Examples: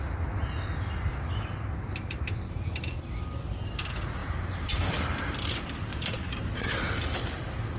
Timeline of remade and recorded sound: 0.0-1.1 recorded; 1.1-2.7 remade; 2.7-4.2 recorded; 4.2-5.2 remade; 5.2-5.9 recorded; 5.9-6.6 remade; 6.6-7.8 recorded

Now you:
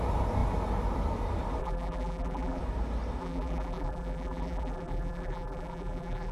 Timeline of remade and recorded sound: 0.0-1.6 recorded; 1.6-2.6 remade; 2.6-3.2 recorded; 3.2-6.3 remade

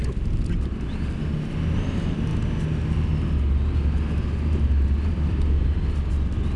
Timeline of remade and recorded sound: 0.0-2.3 remade; 2.3-5.1 recorded; 5.1-6.6 remade